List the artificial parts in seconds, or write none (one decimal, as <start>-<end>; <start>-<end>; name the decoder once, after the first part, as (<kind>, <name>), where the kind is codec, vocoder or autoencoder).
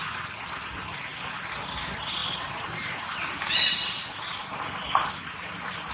none